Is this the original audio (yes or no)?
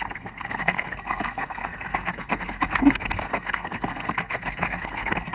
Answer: no